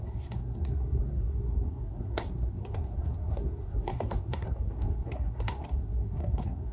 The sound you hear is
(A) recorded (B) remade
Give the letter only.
B